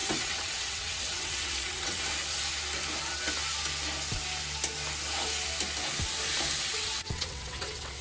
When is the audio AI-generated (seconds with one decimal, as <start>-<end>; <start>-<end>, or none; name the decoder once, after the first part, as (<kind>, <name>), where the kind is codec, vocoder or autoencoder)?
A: 0.0-2.1 (vocoder, WaveNeXt); 6.6-8.0